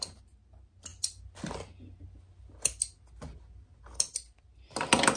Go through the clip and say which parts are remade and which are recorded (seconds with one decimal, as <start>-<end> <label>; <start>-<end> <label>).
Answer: 0.0-5.2 recorded